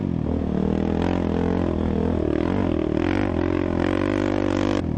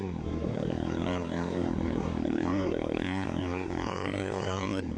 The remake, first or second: second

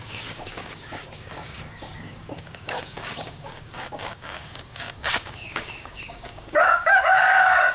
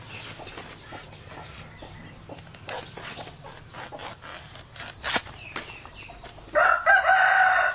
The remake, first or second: first